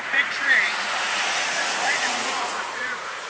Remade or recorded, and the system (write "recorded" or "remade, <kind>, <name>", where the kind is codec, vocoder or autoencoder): remade, vocoder, Vocos